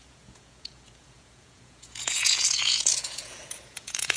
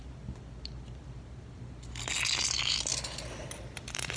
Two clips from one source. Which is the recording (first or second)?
second